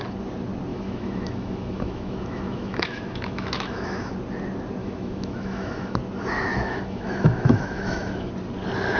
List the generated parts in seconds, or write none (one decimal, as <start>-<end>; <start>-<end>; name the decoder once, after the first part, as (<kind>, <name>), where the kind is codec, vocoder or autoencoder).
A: 0.7-4.1 (autoencoder, DAC-VAE); 4.8-6.0; 6.5-8.3